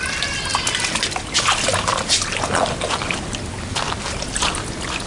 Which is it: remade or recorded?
recorded